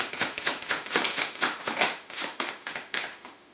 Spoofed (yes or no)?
yes